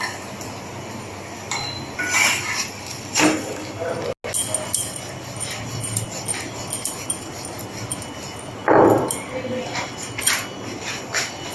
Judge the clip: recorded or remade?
recorded